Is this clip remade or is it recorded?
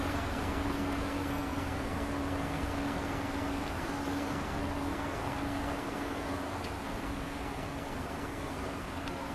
remade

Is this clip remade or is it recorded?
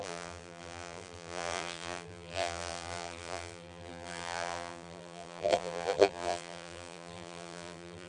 remade